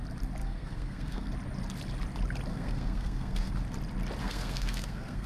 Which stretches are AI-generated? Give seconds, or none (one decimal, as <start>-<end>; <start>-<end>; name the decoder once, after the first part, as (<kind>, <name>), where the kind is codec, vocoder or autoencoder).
0.4-1.3 (codec, SNAC); 2.5-3.5; 4.2-5.3